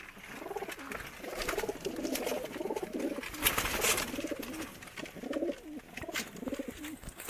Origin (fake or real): real